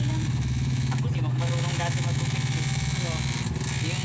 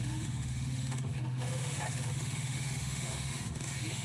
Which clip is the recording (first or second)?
first